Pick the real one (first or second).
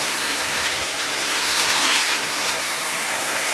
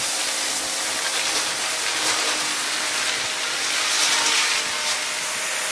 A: second